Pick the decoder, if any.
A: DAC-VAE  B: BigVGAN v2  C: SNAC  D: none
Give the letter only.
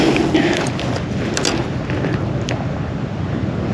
D